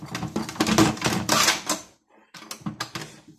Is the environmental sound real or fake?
real